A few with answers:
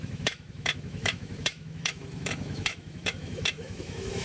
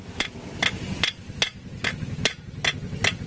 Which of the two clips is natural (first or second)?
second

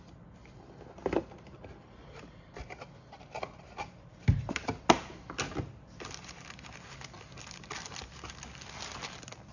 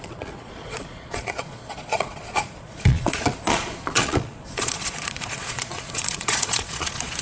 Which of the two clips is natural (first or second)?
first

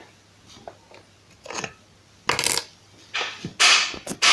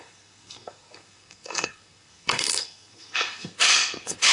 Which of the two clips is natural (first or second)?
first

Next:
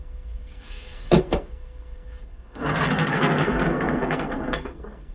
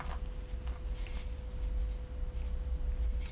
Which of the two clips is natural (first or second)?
second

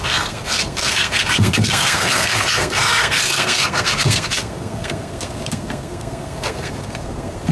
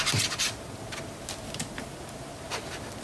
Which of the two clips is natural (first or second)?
second